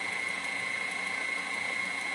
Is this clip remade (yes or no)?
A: no